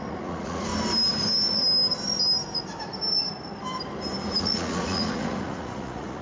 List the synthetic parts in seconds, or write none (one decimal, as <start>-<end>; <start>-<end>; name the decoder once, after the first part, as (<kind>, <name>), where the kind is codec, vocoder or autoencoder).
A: 0.0-0.7 (vocoder, Vocos); 4.4-6.2